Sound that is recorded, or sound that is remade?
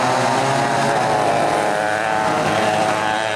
recorded